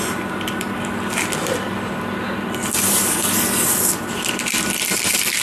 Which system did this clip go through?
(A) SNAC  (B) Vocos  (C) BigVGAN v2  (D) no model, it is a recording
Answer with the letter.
C